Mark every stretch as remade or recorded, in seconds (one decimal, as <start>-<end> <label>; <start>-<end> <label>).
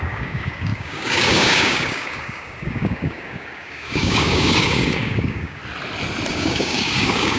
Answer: 0.0-5.6 remade; 5.6-6.3 recorded; 6.3-7.4 remade